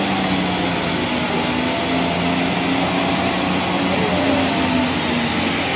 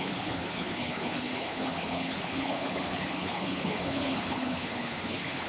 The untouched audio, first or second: first